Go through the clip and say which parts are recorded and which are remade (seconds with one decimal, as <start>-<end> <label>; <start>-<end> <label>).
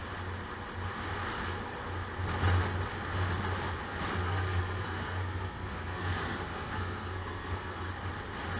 0.0-4.2 recorded; 4.2-7.9 remade; 7.9-8.6 recorded